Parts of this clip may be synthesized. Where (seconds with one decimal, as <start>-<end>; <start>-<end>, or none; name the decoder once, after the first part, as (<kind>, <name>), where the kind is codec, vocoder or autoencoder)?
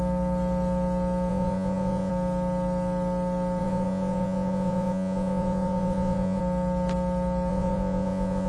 1.3-2.1 (vocoder, Vocos); 3.6-6.4; 7.5-8.5